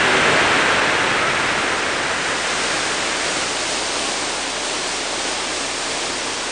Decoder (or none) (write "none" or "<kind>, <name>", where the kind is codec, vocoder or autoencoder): none